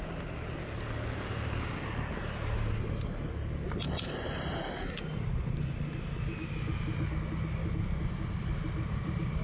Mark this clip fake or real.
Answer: real